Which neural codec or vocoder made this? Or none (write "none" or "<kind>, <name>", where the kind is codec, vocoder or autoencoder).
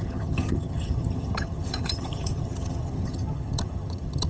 vocoder, HiFi-GAN